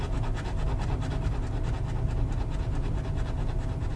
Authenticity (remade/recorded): recorded